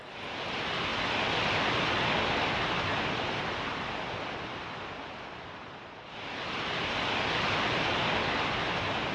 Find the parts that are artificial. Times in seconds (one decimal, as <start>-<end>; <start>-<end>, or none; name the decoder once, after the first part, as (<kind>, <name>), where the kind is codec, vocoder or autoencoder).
none